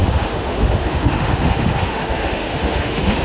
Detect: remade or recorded remade